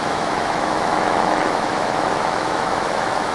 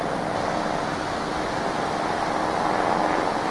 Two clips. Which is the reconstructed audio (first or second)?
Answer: first